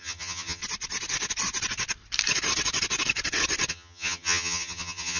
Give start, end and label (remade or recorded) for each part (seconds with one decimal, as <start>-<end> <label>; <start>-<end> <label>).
0.0-0.6 remade; 0.6-3.7 recorded; 3.7-5.2 remade